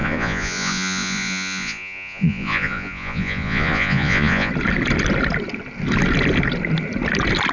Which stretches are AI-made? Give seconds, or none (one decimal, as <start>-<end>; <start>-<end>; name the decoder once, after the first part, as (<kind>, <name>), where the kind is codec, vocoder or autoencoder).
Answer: 0.0-4.5 (vocoder, Vocos)